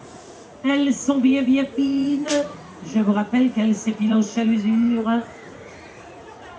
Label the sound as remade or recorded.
remade